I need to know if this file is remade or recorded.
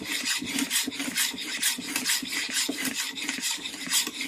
remade